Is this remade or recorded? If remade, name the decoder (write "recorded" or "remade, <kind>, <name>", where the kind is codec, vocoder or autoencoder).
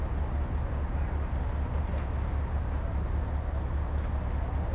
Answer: recorded